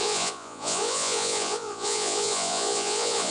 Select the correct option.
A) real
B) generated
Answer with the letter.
B